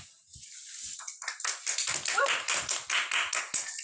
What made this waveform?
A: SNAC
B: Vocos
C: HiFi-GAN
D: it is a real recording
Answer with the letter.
D